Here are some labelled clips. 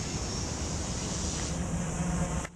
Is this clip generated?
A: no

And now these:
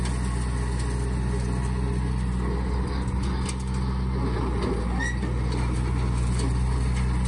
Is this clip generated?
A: no